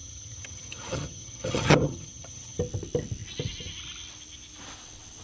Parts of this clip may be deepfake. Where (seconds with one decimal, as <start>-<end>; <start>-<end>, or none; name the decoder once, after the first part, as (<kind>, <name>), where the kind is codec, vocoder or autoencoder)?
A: 0.0-2.6 (vocoder, HiFi-GAN)